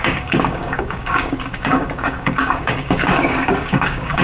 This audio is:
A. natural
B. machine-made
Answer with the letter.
B